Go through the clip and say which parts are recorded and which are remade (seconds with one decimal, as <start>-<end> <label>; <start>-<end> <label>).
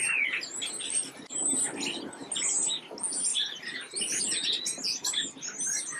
0.0-3.3 recorded; 3.3-4.2 remade; 4.2-6.0 recorded